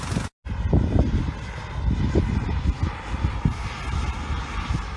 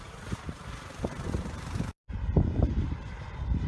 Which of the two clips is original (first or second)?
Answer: first